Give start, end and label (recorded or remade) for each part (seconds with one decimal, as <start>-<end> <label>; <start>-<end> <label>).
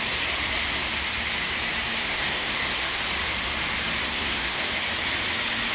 0.0-2.0 recorded; 2.0-3.0 remade; 3.0-4.1 recorded; 4.1-4.6 remade; 4.6-5.7 recorded